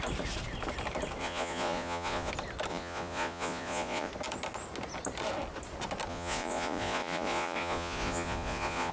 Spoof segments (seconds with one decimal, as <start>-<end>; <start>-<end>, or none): 1.2-2.3; 2.7-4.1; 6.1-8.9